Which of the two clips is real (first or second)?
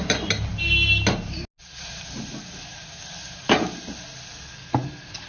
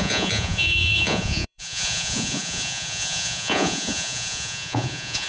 first